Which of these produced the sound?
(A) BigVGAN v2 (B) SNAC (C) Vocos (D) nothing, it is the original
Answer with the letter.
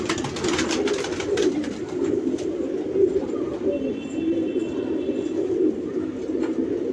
D